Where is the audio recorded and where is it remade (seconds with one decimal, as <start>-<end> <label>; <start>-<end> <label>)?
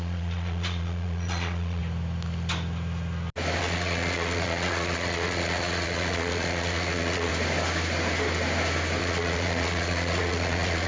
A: 0.0-1.8 remade; 1.8-3.6 recorded; 3.6-7.3 remade; 7.3-9.0 recorded; 9.0-10.9 remade